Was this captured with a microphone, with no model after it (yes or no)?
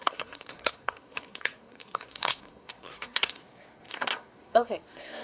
no